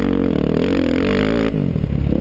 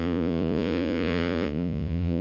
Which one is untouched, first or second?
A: first